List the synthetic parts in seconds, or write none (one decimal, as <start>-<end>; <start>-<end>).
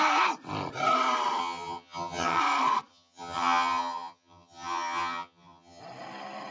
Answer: 1.4-2.4; 2.9-5.8